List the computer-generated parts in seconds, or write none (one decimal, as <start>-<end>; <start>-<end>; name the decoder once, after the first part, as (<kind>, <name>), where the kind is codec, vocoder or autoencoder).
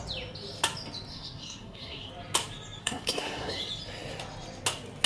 1.1-2.1 (codec, SNAC); 2.8-3.6